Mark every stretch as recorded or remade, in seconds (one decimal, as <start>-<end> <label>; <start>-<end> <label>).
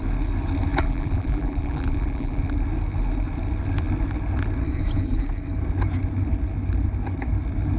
0.0-0.7 recorded; 0.7-2.4 remade; 2.4-7.8 recorded